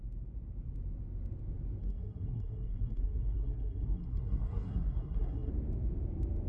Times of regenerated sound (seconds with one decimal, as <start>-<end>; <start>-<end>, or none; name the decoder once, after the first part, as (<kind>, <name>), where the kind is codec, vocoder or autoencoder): 1.8-5.5 (codec, SNAC)